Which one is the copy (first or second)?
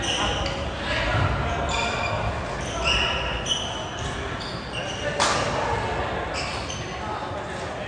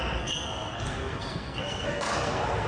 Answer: second